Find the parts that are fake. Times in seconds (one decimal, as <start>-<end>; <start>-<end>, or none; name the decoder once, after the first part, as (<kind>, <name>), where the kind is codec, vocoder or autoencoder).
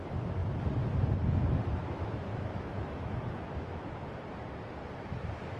1.8-4.1 (autoencoder, DAC-VAE)